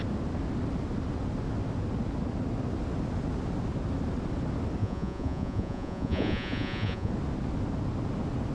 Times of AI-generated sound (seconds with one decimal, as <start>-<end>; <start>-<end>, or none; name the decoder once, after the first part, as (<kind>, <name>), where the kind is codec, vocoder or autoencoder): 4.8-7.1 (vocoder, Vocos)

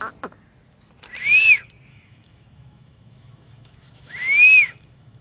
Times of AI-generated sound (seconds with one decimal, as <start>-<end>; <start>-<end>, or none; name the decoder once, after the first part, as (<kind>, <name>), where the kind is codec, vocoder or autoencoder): 1.9-5.2 (autoencoder, DAC-VAE)

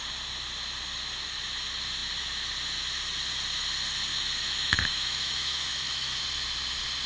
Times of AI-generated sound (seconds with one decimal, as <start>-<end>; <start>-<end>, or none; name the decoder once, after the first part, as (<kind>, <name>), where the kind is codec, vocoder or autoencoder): 4.1-6.2 (autoencoder, DAC-VAE)

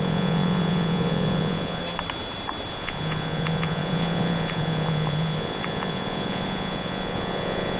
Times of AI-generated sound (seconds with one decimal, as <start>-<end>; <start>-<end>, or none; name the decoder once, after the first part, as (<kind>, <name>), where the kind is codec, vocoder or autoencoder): 0.0-1.8 (vocoder, Vocos); 2.7-7.8